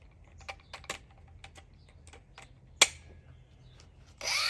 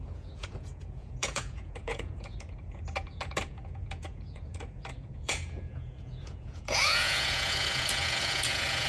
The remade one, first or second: second